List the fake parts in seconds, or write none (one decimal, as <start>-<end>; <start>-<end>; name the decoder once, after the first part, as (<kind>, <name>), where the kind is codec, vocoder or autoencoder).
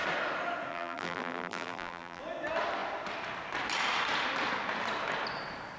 0.7-2.2 (vocoder, BigVGAN v2)